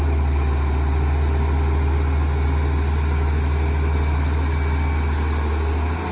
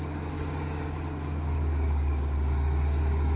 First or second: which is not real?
second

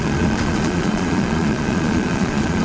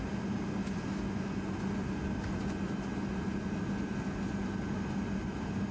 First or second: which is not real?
first